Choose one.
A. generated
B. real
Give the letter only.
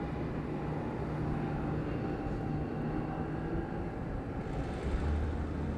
B